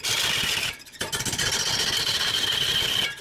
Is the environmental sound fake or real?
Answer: real